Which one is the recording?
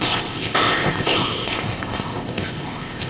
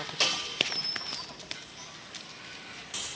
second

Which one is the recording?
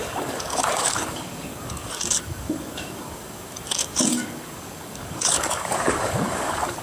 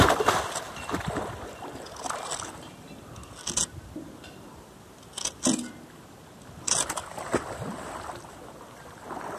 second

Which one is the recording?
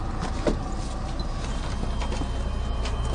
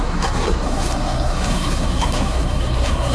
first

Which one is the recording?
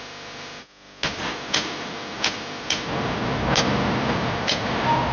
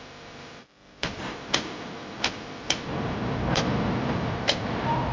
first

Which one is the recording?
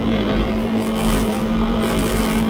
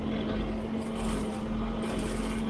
second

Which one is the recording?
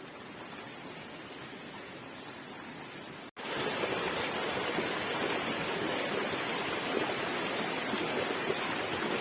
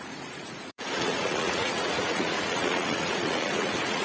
first